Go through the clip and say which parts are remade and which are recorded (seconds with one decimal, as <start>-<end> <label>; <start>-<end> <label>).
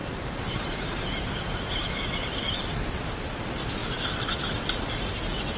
0.0-3.4 remade; 3.4-3.8 recorded; 3.8-5.0 remade; 5.0-5.6 recorded